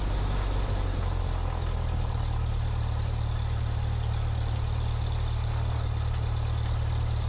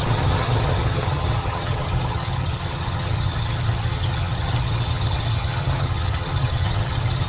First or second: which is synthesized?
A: second